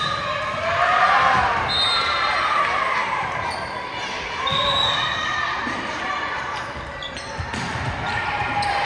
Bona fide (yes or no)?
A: no